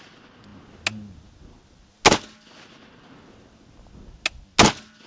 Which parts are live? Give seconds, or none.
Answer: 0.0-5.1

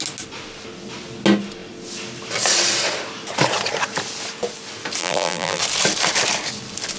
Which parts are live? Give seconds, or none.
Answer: 0.0-5.0; 5.6-7.0

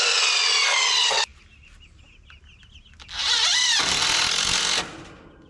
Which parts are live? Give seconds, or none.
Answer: 0.0-5.5

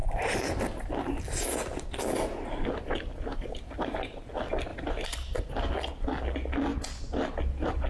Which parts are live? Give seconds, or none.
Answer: 0.9-3.3; 4.3-4.7; 5.5-7.9

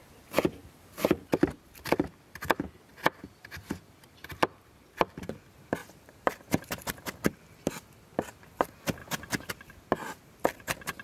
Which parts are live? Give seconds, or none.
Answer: 0.0-2.9; 4.3-5.8; 6.8-11.0

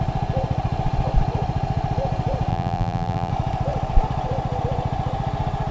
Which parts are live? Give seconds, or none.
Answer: 0.0-2.5; 3.3-5.7